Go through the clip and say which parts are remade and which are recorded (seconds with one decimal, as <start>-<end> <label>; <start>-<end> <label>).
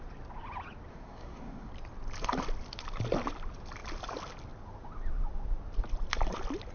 0.0-0.9 recorded; 0.9-1.7 remade; 1.7-6.7 recorded